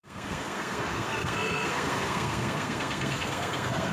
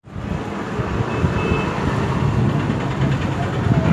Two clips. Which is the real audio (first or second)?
second